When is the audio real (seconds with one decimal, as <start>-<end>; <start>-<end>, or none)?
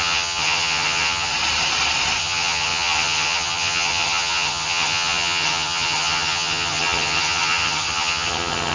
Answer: 1.3-2.2